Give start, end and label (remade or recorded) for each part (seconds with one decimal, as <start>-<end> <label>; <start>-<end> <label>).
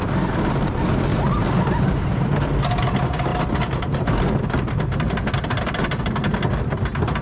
0.0-7.2 recorded